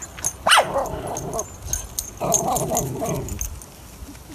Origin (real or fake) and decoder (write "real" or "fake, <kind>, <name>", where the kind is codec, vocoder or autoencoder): real